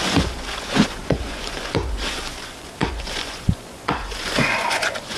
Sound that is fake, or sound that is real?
fake